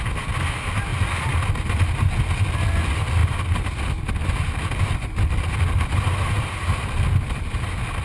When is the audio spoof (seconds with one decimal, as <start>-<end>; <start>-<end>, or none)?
none